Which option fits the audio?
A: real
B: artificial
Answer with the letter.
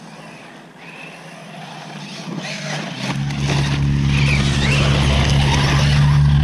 A